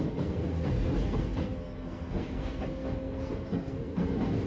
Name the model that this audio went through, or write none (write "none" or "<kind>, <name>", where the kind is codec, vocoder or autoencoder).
codec, SNAC